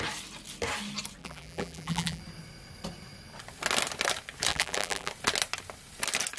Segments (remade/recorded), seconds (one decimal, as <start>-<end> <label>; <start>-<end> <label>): 0.0-1.2 recorded; 1.2-2.2 remade; 2.2-4.5 recorded; 4.5-5.1 remade; 5.1-6.4 recorded

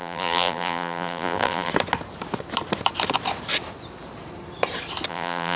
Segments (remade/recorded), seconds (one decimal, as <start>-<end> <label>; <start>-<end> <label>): 0.0-1.7 remade; 1.7-5.1 recorded; 5.1-5.6 remade

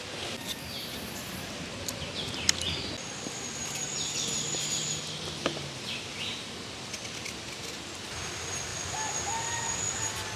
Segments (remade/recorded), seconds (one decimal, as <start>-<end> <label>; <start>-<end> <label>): 0.0-10.4 recorded